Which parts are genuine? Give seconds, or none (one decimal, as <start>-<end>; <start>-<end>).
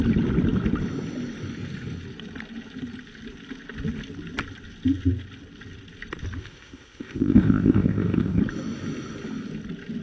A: 0.0-6.4; 8.4-10.0